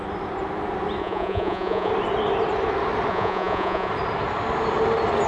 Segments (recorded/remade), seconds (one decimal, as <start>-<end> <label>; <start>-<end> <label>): 0.0-1.0 recorded; 1.0-1.9 remade; 1.9-3.1 recorded; 3.1-3.9 remade; 3.9-5.3 recorded